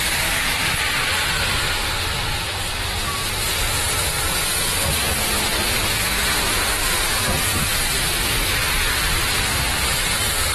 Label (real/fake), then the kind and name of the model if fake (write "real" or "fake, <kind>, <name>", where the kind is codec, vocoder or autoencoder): fake, vocoder, BigVGAN v2